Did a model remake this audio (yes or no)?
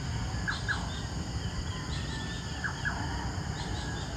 no